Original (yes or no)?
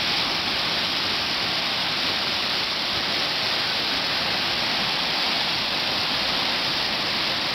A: yes